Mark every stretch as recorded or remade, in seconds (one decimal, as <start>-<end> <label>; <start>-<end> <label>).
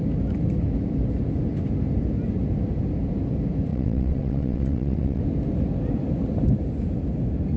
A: 0.0-3.7 recorded; 3.7-5.2 remade; 5.2-7.6 recorded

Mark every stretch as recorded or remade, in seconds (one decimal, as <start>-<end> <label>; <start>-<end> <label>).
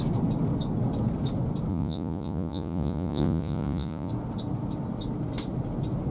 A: 0.0-1.7 recorded; 1.7-4.1 remade; 4.1-6.1 recorded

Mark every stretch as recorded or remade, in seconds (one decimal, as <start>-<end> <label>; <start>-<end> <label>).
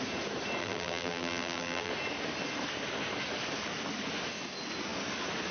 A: 0.0-0.6 recorded; 0.6-1.9 remade; 1.9-5.5 recorded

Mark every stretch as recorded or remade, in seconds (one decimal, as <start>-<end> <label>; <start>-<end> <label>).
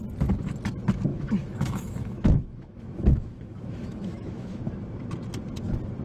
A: 0.0-1.1 recorded; 1.1-4.7 remade; 4.7-6.0 recorded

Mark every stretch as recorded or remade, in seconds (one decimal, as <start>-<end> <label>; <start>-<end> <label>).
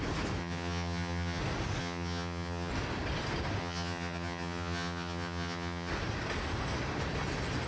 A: 0.0-0.4 recorded; 0.4-1.4 remade; 1.4-1.8 recorded; 1.8-2.7 remade; 2.7-3.6 recorded; 3.6-5.9 remade; 5.9-7.7 recorded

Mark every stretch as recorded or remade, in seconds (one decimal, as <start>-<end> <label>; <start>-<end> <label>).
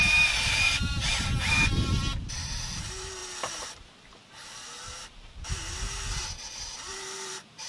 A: 0.0-1.1 remade; 1.1-2.2 recorded; 2.2-3.2 remade; 3.2-4.9 recorded; 4.9-7.7 remade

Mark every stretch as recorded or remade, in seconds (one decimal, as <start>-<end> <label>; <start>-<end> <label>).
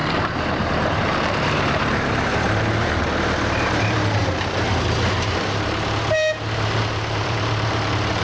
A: 0.0-8.2 remade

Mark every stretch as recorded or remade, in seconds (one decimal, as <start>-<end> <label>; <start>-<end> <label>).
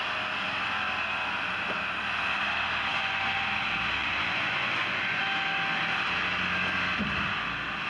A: 0.0-2.9 recorded; 2.9-3.4 remade; 3.4-4.0 recorded; 4.0-5.2 remade; 5.2-7.9 recorded